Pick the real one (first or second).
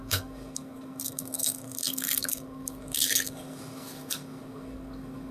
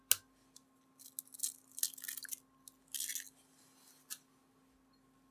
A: second